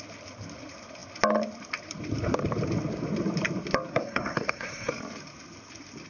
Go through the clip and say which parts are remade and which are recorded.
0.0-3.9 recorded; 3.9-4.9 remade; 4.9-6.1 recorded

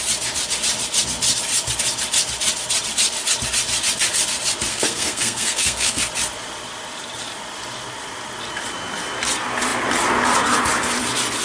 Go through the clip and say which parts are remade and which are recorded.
0.0-4.7 recorded; 4.7-6.0 remade; 6.0-11.4 recorded